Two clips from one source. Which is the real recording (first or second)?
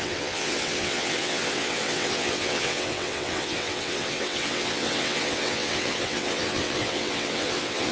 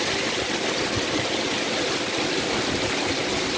second